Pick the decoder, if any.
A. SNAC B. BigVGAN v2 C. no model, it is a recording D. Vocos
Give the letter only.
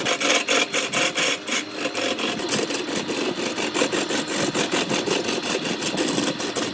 C